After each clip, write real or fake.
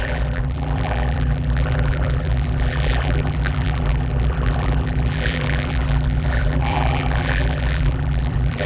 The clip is fake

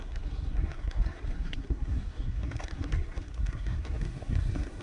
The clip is fake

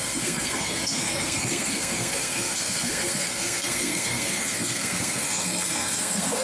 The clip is fake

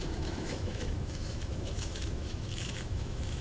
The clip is fake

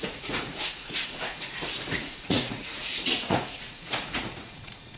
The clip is fake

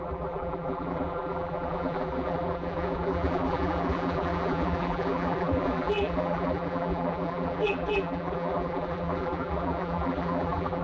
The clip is fake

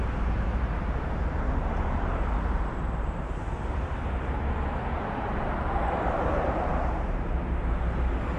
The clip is fake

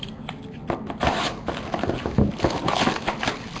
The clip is real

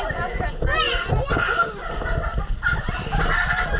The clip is real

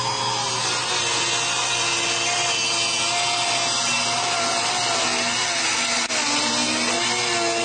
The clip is real